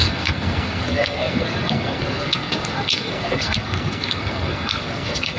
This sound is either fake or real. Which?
fake